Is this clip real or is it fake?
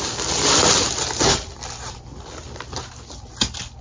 real